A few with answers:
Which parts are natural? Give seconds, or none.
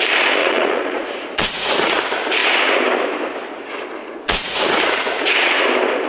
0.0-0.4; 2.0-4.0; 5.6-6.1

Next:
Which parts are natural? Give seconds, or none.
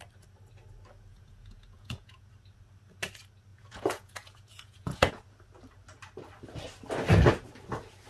0.0-1.1; 2.3-3.5; 5.1-8.1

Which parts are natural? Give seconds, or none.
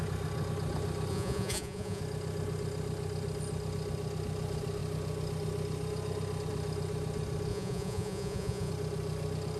0.0-1.1; 2.0-7.5; 8.7-9.6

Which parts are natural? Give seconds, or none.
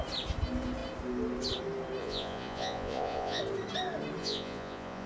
0.0-2.0; 3.4-4.2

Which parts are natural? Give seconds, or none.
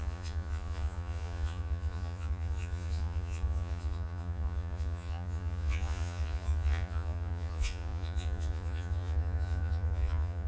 none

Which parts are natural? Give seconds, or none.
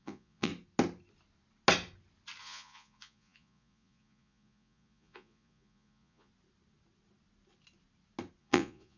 0.5-2.4; 6.3-8.4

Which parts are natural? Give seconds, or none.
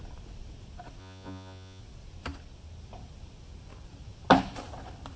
0.0-1.0; 1.8-5.2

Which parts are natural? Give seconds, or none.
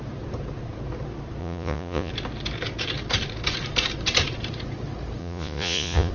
0.0-1.4; 2.1-5.2